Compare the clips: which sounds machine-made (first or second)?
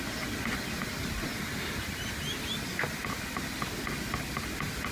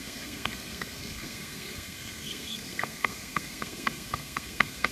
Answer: second